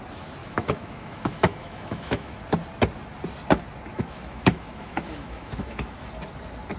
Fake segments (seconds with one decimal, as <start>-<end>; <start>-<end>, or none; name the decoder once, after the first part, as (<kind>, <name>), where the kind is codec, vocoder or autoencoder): 0.4-2.4 (autoencoder, DAC-VAE); 3.9-6.1